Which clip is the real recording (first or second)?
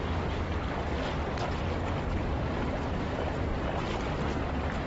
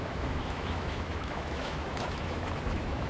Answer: first